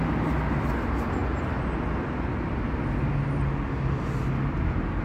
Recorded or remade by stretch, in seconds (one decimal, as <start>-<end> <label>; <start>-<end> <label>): 0.0-5.0 recorded